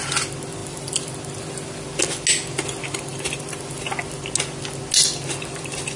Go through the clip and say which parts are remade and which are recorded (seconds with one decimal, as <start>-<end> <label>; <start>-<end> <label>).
0.0-0.6 recorded; 0.6-1.1 remade; 1.1-3.1 recorded; 3.1-3.9 remade; 3.9-6.0 recorded